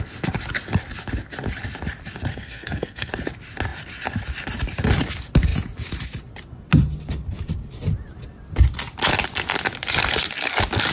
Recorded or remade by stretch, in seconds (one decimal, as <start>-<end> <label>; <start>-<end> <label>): 0.0-2.3 recorded; 2.3-3.1 remade; 3.1-10.9 recorded